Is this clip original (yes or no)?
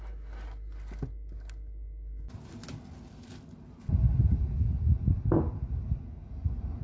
yes